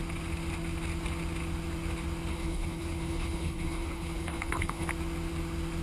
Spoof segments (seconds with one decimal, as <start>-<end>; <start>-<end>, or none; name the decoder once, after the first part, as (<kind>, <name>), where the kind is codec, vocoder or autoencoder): 2.3-4.9 (codec, HILCodec)